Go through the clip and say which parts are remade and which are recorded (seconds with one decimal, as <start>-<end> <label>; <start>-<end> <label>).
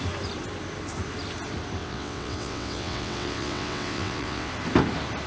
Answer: 0.0-1.8 recorded; 1.8-4.5 remade; 4.5-5.3 recorded